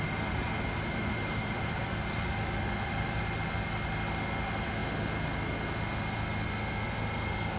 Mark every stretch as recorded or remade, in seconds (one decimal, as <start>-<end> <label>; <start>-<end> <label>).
0.0-0.4 recorded; 0.4-3.2 remade; 3.2-7.6 recorded